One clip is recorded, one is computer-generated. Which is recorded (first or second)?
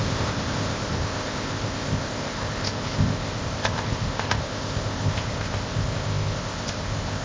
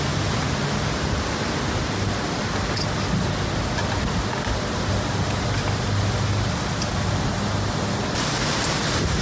second